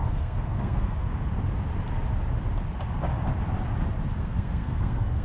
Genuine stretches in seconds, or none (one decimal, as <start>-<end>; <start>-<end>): 1.1-4.2